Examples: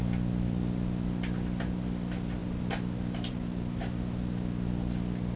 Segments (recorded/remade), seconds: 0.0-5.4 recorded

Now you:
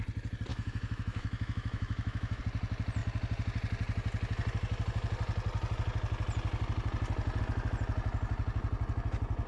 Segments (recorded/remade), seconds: 0.0-0.5 recorded; 0.5-2.4 remade; 2.4-9.5 recorded

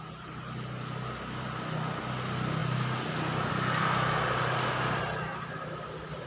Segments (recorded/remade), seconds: 0.0-6.3 recorded

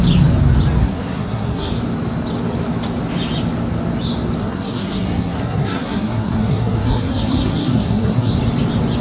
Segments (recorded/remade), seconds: 0.0-0.8 recorded; 0.8-1.7 remade; 1.7-4.4 recorded; 4.4-8.3 remade; 8.3-9.0 recorded